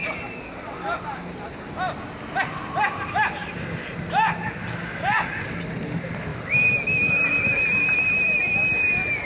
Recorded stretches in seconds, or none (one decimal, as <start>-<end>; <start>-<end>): 0.0-9.3

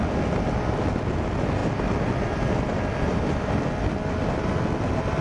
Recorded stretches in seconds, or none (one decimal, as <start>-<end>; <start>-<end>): 0.0-5.2

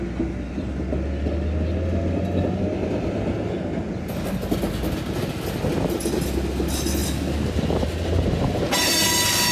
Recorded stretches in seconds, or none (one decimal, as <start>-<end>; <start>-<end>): 0.0-9.5